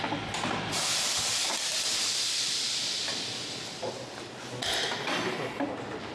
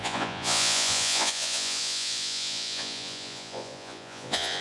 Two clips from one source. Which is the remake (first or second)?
second